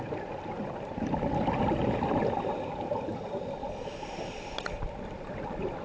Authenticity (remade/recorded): remade